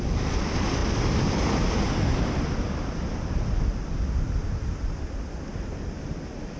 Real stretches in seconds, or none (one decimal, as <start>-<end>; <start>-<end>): 0.0-6.6

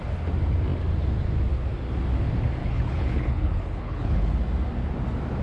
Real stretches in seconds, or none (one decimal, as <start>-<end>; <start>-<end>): 0.0-2.6; 4.3-5.4

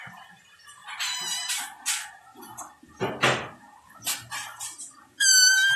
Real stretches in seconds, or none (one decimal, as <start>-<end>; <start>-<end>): 0.0-0.8; 1.8-5.8